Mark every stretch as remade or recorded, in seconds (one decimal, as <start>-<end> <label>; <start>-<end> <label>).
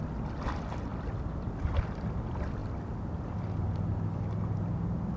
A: 0.0-5.2 recorded